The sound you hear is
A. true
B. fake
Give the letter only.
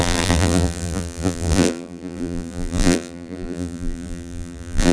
B